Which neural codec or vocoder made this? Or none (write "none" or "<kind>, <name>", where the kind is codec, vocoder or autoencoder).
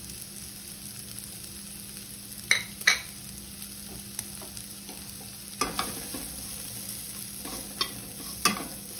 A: none